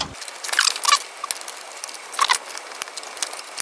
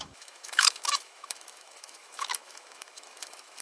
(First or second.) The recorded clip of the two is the first